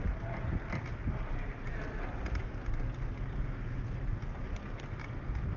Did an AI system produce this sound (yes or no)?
no